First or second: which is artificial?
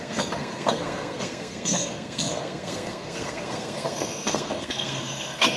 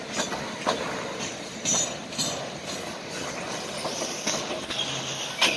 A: first